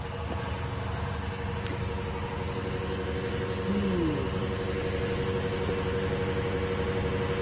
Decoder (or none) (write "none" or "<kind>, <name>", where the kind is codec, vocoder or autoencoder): none